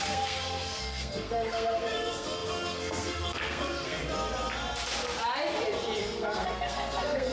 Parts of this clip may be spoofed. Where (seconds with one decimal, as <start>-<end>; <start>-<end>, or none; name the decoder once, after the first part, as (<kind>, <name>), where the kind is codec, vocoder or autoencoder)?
0.0-4.0 (codec, SNAC); 6.0-7.3

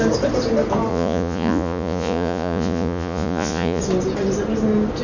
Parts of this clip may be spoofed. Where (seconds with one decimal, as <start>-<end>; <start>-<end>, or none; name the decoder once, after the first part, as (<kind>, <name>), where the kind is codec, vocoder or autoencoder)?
0.9-3.8 (vocoder, Vocos)

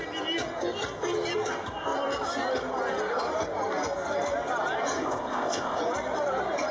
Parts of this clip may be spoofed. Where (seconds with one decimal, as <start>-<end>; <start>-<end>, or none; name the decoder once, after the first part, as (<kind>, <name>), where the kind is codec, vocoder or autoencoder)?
5.0-5.8 (codec, ZipCodec)

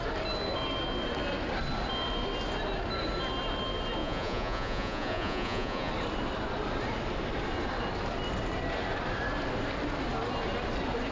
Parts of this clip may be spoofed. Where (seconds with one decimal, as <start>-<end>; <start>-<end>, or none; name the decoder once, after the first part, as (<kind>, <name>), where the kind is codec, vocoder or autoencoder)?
4.0-5.9 (vocoder, Vocos)